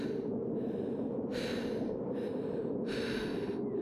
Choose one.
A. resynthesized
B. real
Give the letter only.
B